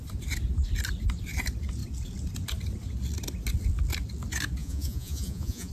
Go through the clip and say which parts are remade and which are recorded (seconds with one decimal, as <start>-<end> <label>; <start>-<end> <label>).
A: 0.0-4.6 recorded; 4.6-5.7 remade